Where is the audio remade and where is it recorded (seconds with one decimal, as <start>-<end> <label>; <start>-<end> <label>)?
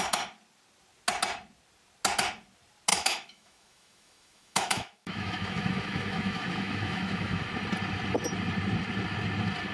0.0-2.9 recorded; 2.9-7.4 remade; 7.4-9.7 recorded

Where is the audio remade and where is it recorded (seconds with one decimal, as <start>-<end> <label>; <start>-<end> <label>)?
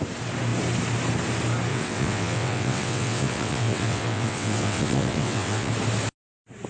0.0-1.7 recorded; 1.7-5.7 remade; 5.7-6.7 recorded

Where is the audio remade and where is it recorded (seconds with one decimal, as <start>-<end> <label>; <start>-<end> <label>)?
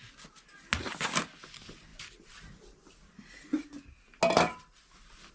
0.0-5.3 recorded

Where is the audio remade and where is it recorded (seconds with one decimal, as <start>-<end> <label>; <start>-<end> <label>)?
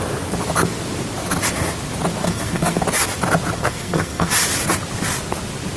0.0-2.2 recorded; 2.2-2.8 remade; 2.8-3.6 recorded; 3.6-4.3 remade; 4.3-5.8 recorded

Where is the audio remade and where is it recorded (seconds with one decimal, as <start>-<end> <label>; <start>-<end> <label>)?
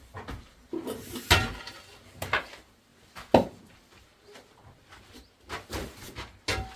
0.0-6.8 recorded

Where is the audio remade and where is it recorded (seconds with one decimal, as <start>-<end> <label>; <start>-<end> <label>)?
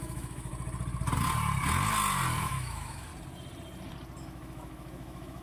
0.0-0.5 remade; 0.5-2.4 recorded; 2.4-3.1 remade; 3.1-4.2 recorded; 4.2-5.4 remade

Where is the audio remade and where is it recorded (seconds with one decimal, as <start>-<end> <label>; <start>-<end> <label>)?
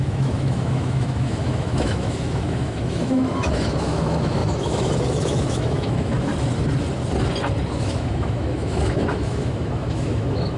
0.0-6.3 remade; 6.3-7.8 recorded; 7.8-10.6 remade